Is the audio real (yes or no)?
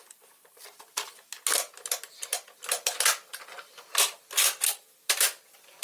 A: yes